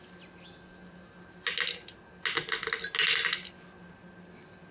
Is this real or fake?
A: real